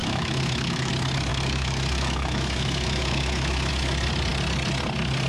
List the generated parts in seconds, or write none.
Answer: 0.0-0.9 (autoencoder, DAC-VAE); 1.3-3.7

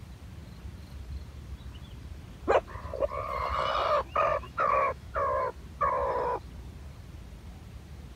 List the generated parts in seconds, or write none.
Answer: 4.3-5.1 (autoencoder, DAC-VAE)

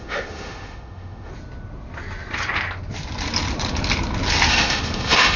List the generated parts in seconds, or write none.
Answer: 0.0-1.3 (autoencoder, DAC-VAE); 4.5-5.4

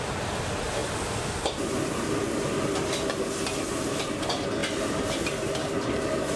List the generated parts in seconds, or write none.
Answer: none